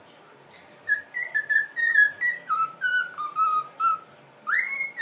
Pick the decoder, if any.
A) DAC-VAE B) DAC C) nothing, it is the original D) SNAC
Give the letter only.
C